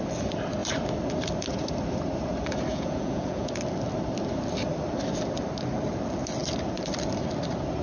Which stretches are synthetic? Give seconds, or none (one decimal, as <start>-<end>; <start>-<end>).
2.7-3.5